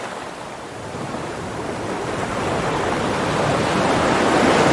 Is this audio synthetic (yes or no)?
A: no